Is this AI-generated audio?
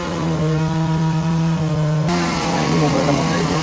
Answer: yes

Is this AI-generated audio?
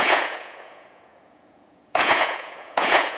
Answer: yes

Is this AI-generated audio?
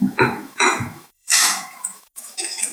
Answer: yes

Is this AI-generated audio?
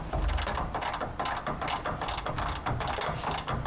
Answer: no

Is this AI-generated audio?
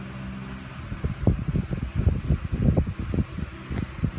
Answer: no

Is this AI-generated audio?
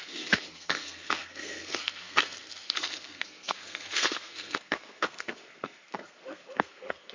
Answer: yes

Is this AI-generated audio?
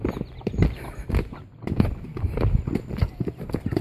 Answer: no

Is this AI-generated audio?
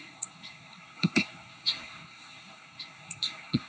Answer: yes